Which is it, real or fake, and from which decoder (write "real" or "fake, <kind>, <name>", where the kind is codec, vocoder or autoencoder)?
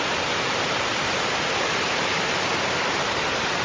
real